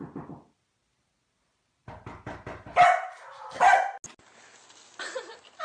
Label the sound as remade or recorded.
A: recorded